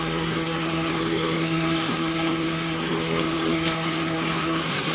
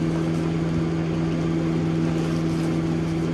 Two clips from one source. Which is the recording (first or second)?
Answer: second